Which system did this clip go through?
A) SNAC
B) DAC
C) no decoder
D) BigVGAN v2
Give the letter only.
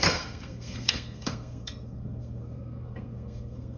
A